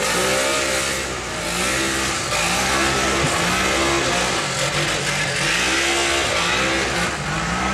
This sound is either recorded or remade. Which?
recorded